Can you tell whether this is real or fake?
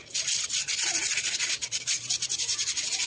real